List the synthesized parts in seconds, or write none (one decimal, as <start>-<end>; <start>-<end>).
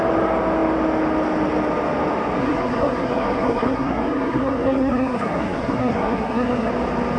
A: 2.4-6.7